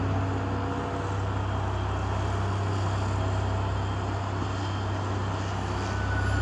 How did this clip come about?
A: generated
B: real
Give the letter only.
B